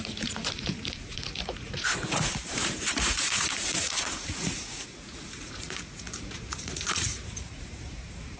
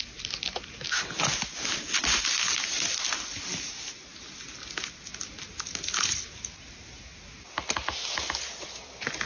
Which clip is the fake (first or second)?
first